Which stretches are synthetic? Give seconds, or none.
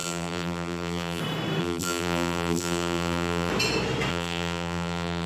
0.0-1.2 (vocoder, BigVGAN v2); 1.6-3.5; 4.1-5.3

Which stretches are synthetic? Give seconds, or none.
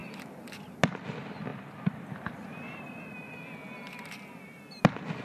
0.0-0.8 (vocoder, BigVGAN v2); 1.5-4.6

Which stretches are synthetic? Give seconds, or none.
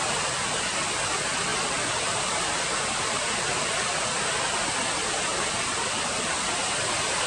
5.3-6.0 (vocoder, BigVGAN v2)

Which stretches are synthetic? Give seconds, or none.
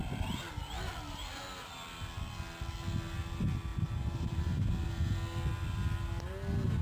3.7-4.7 (vocoder, BigVGAN v2)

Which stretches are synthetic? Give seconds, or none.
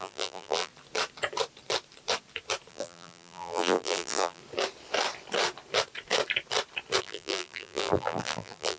0.0-0.7 (vocoder, BigVGAN v2); 2.7-4.4; 7.0-8.8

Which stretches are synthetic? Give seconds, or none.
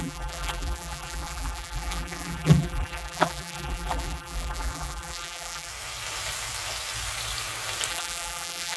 0.0-5.7 (vocoder, BigVGAN v2); 7.9-8.8